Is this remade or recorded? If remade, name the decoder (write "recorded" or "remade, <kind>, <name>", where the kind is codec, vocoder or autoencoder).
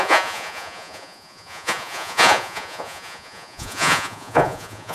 remade, vocoder, Vocos